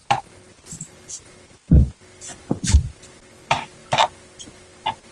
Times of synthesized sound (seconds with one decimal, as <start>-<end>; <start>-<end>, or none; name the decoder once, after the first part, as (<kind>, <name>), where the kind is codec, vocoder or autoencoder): none